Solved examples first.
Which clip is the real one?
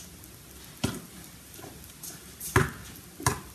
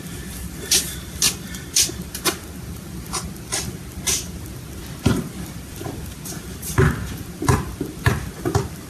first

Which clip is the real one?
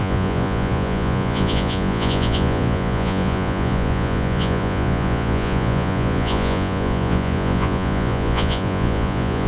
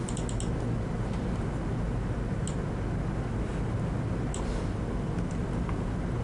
second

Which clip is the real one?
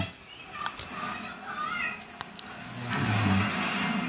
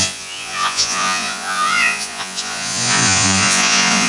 first